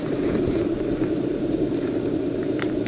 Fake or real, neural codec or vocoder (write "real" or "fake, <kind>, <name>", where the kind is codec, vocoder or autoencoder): fake, vocoder, BigVGAN v2